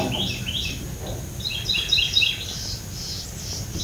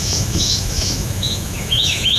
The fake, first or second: second